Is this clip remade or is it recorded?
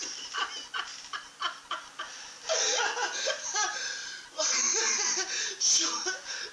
recorded